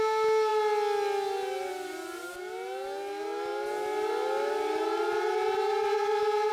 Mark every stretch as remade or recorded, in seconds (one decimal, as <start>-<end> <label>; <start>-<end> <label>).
0.0-6.5 recorded